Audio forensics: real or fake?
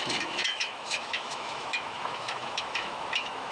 fake